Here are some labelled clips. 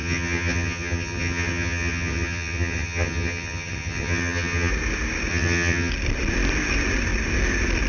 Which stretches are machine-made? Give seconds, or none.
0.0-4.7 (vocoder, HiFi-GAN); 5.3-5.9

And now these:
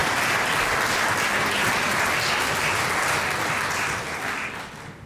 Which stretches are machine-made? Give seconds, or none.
none

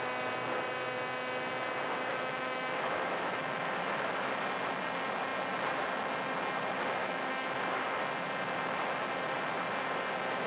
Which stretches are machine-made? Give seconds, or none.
2.1-4.3 (autoencoder, DAC-VAE); 7.0-7.6

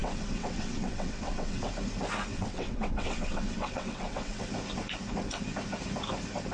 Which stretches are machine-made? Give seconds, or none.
0.0-1.7 (vocoder, WaveNeXt); 2.3-4.5

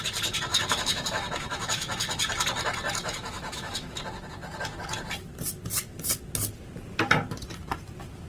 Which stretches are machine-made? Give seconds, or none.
0.5-2.3 (autoencoder, DAC-VAE); 3.0-4.0

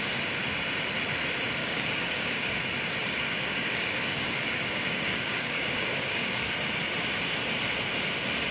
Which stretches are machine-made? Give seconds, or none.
1.6-2.6 (codec, DAC); 3.0-6.4

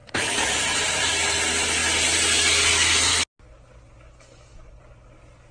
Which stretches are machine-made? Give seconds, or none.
none